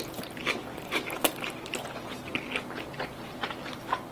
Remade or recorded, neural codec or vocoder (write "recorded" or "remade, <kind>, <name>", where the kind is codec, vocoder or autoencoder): recorded